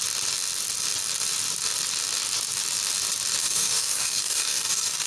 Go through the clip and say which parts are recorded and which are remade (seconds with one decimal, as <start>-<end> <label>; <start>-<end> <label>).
0.0-3.4 recorded; 3.4-5.1 remade